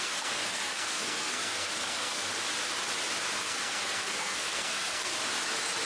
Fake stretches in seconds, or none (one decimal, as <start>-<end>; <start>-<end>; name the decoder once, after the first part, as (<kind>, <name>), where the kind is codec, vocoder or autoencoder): 0.0-2.3 (codec, SNAC); 3.4-5.1